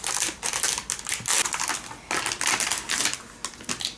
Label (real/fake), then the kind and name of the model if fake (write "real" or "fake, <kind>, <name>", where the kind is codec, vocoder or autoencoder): real